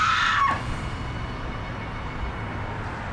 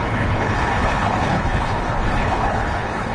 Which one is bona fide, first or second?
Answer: first